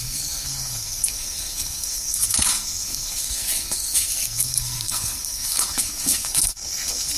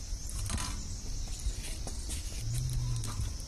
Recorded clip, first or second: second